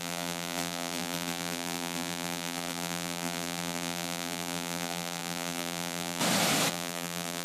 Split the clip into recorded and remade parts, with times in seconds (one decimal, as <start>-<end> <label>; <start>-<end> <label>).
0.0-6.2 remade; 6.2-6.7 recorded; 6.7-7.4 remade